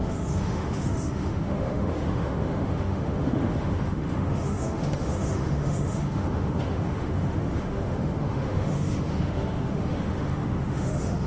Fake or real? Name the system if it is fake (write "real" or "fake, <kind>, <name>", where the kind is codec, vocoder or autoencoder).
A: fake, autoencoder, DAC-VAE